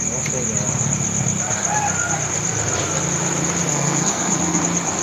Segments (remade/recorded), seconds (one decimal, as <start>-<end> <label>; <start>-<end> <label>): 0.0-3.7 recorded; 3.7-4.6 remade; 4.6-5.0 recorded